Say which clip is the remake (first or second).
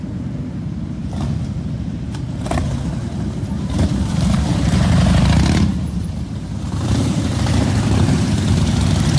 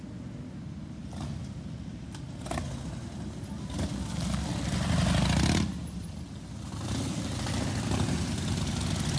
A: first